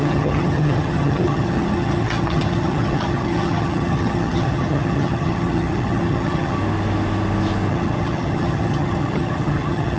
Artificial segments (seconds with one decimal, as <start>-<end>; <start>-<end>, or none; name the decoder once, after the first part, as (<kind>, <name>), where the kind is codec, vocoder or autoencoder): 0.0-6.6 (vocoder, HiFi-GAN); 7.7-10.0